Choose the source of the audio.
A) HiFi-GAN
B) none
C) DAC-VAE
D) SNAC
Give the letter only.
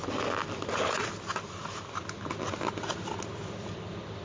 B